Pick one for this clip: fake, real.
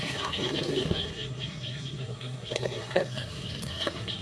fake